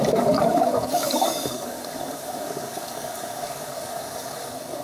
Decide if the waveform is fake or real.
fake